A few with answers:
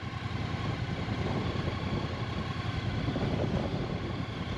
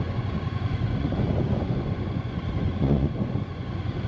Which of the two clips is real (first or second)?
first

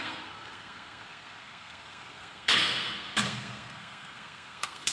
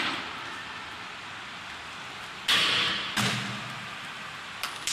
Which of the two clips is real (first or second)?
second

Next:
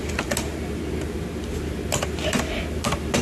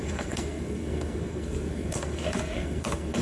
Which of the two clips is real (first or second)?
first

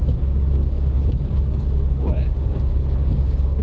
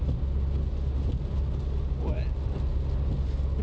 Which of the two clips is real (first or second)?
second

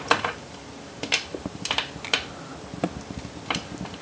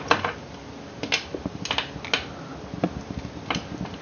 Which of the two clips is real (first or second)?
second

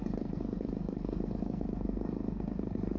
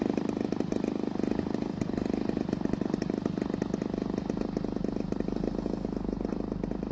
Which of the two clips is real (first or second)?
second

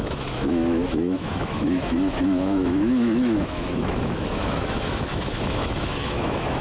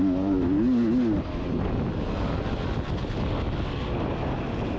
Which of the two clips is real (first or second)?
second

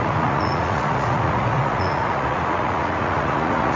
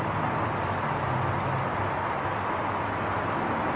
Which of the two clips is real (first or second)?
second